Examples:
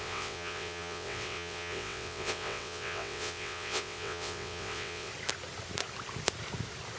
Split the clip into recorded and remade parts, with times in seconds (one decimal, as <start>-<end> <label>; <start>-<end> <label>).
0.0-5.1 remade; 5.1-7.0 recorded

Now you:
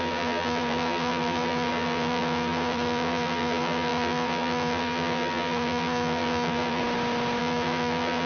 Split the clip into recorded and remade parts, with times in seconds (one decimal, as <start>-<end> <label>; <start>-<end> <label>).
0.0-6.8 remade; 6.8-7.4 recorded; 7.4-8.3 remade

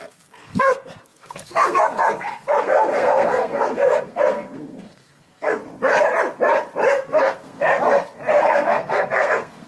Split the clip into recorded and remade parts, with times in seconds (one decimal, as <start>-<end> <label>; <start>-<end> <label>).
0.0-5.6 remade; 5.6-6.9 recorded; 6.9-7.7 remade; 7.7-8.4 recorded; 8.4-9.7 remade